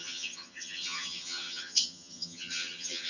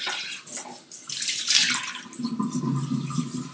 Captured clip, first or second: second